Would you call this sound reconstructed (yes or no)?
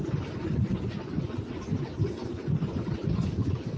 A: no